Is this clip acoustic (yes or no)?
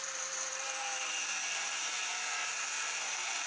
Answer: no